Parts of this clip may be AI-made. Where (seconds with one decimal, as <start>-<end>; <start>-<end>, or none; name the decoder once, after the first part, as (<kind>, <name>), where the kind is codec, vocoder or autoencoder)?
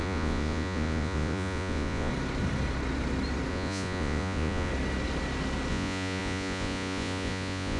0.0-2.1 (vocoder, Vocos); 3.5-4.7; 5.7-7.8